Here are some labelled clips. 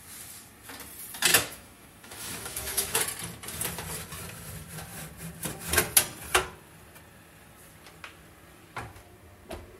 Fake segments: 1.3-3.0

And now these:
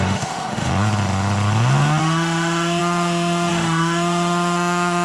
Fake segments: 0.0-0.7; 2.0-5.0

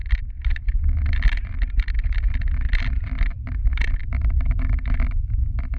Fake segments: 4.0-5.8

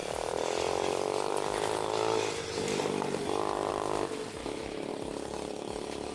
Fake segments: 4.4-4.9

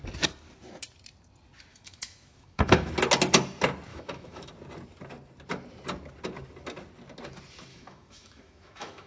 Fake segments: 1.7-2.9; 3.9-4.5; 7.7-9.1

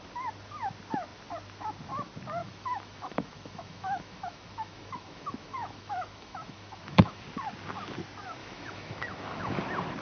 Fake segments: 2.4-7.2; 8.4-9.5

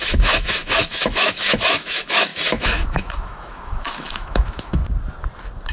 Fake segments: 0.0-4.8